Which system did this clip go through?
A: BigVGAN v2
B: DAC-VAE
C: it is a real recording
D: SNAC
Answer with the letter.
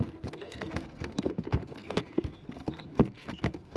D